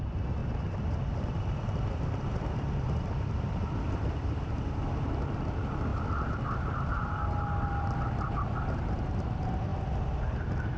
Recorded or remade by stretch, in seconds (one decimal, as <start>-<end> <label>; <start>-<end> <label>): 0.0-0.4 recorded; 0.4-4.4 remade; 4.4-5.9 recorded; 5.9-7.7 remade; 7.7-10.8 recorded